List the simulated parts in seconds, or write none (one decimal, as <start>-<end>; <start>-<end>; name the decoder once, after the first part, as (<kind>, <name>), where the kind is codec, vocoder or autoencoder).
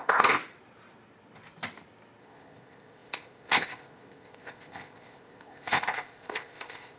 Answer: 0.0-0.4 (codec, ZipCodec); 2.2-7.0